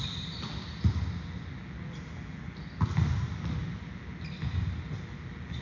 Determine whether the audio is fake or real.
real